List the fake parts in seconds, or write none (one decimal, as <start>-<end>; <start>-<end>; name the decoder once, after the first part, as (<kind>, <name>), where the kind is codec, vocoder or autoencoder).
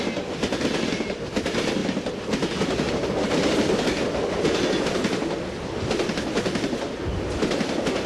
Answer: none